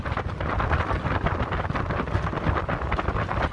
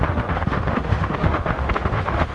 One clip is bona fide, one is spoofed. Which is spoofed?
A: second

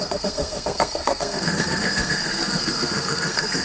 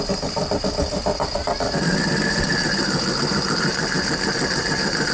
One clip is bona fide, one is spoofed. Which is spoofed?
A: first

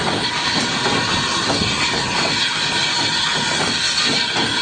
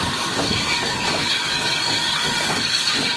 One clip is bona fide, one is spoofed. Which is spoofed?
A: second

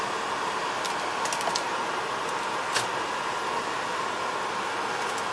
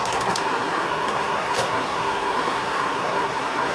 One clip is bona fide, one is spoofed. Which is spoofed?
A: second